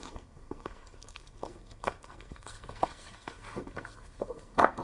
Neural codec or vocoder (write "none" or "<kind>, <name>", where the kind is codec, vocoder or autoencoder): codec, SNAC